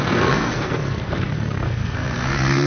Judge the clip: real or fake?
fake